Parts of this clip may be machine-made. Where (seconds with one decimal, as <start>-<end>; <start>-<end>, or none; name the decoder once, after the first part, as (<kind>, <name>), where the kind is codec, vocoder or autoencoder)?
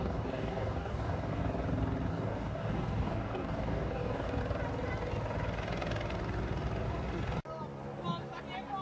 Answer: 0.0-1.4 (codec, DAC); 2.1-4.4